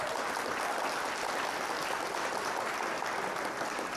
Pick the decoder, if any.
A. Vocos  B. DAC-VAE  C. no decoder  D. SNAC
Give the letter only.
C